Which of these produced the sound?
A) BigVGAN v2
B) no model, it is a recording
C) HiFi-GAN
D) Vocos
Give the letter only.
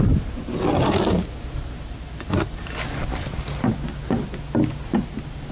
B